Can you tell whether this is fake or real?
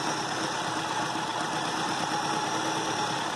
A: real